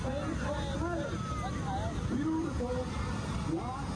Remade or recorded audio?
recorded